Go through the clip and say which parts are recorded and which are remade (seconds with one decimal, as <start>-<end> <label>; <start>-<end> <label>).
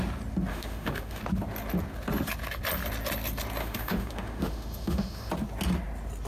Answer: 0.0-0.5 recorded; 0.5-1.2 remade; 1.2-3.6 recorded; 3.6-5.3 remade; 5.3-6.3 recorded